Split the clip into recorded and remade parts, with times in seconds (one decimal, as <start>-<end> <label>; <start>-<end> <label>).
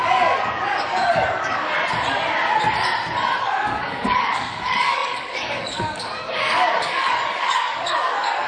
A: 0.0-1.7 remade; 1.7-3.4 recorded; 3.4-8.5 remade